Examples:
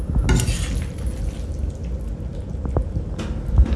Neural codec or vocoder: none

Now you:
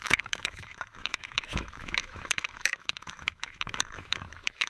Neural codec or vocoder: autoencoder, DAC-VAE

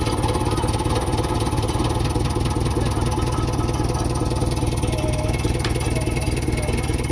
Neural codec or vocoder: none